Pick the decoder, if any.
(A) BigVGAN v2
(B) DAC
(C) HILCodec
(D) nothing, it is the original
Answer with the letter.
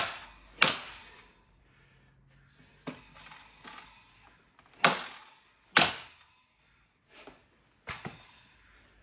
D